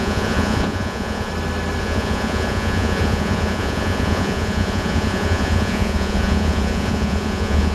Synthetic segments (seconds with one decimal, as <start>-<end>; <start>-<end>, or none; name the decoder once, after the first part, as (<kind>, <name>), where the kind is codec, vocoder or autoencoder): 0.0-1.3 (vocoder, Vocos); 1.8-7.7